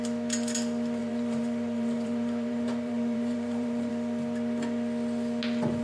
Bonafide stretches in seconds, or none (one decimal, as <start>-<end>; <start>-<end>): 0.0-1.0; 3.9-5.8